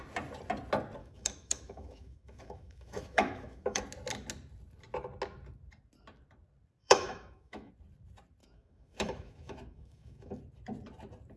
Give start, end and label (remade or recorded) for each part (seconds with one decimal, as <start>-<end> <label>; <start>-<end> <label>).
0.0-1.0 recorded; 1.0-3.8 remade; 3.8-6.8 recorded; 6.8-7.7 remade; 7.7-8.4 recorded; 8.4-10.4 remade; 10.4-11.4 recorded